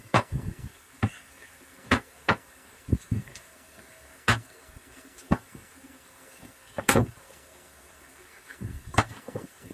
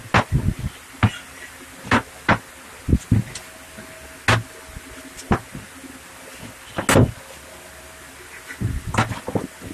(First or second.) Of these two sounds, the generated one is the first